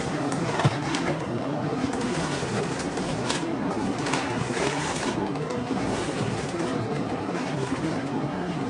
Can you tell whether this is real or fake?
fake